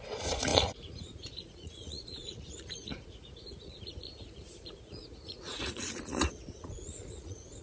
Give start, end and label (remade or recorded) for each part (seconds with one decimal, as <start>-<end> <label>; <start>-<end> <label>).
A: 0.0-7.6 remade